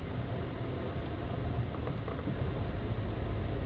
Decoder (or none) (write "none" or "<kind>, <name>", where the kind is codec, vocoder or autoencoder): none